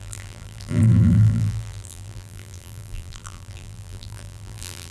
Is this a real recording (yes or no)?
no